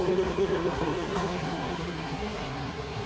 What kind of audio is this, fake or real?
fake